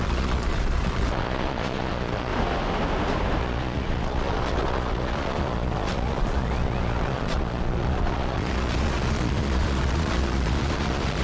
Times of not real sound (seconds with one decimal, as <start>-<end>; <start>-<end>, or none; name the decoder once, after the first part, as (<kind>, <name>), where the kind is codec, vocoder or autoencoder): 0.0-2.3 (vocoder, Vocos); 3.4-11.2